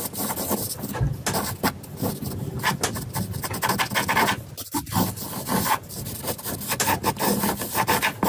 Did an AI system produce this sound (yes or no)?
no